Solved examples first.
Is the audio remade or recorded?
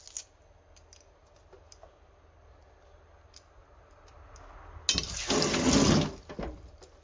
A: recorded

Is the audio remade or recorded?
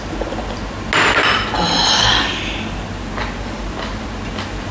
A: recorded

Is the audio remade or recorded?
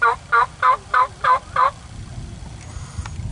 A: recorded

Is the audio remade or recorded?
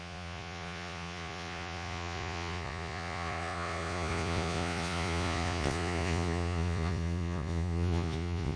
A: remade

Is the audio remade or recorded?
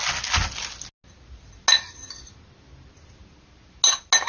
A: recorded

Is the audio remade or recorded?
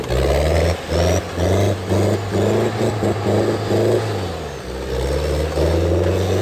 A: recorded